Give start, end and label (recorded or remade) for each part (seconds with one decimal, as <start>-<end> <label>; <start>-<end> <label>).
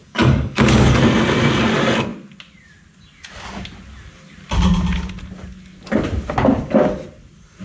0.0-1.0 remade; 1.0-7.6 recorded